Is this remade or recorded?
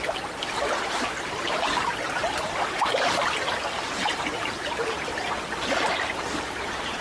recorded